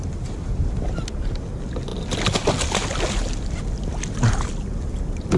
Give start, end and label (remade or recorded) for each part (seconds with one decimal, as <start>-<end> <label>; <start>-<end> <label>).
0.0-5.4 recorded